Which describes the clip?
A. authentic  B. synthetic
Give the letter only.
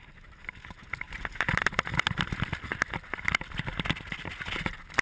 A